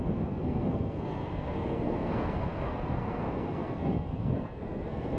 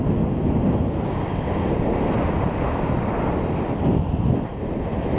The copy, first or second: first